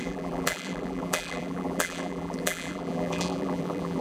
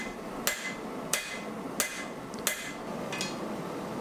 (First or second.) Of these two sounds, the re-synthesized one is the first